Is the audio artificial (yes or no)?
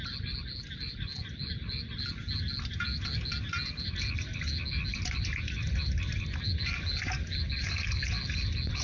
no